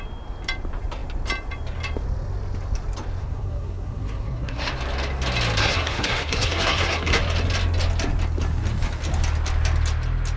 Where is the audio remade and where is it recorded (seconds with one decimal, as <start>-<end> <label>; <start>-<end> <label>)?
0.0-3.2 recorded; 3.2-4.7 remade; 4.7-5.6 recorded; 5.6-7.2 remade; 7.2-10.4 recorded